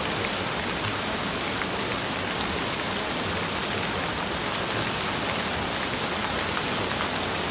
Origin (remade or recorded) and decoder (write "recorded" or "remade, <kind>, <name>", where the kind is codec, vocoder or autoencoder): recorded